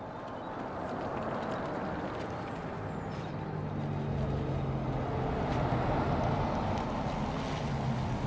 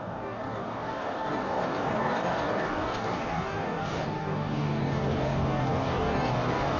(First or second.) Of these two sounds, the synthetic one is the second